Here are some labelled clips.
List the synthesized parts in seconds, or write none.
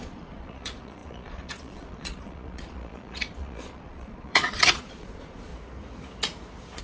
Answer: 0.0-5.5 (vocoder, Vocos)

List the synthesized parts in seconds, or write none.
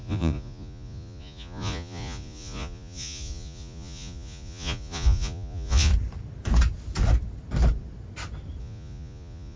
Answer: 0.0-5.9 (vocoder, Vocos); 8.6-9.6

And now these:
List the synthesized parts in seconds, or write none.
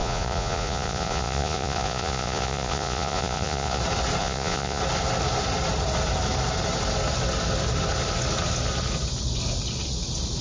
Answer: 0.0-3.8 (vocoder, Vocos); 4.2-4.8